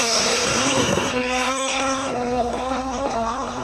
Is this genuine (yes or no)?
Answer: no